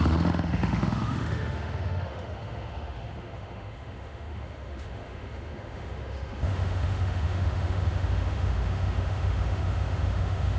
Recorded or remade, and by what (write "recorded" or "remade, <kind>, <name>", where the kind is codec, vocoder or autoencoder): remade, autoencoder, DAC-VAE